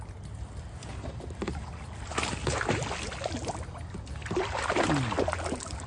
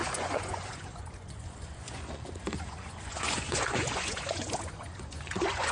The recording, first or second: first